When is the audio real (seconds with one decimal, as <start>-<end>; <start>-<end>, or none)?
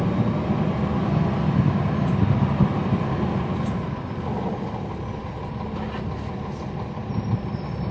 0.0-7.9